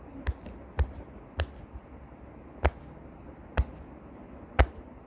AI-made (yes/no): no